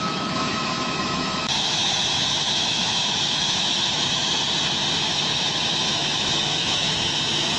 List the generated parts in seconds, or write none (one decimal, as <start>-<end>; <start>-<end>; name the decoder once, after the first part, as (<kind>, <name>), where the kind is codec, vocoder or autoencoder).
0.0-4.3 (autoencoder, DAC-VAE); 5.0-7.6